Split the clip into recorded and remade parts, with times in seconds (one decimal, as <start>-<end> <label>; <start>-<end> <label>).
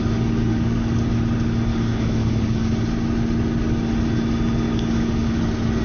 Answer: 0.0-0.5 recorded; 0.5-1.1 remade; 1.1-1.7 recorded; 1.7-2.7 remade; 2.7-4.7 recorded; 4.7-5.3 remade; 5.3-5.8 recorded